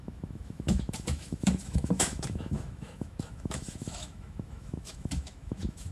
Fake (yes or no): yes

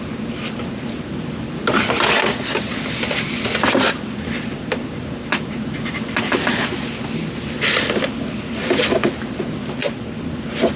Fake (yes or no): no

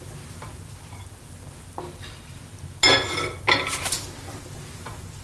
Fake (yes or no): no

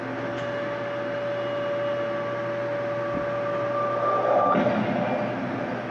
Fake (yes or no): no